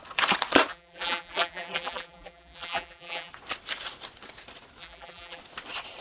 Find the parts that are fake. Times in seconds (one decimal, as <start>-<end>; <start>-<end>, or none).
0.7-3.3; 4.8-5.4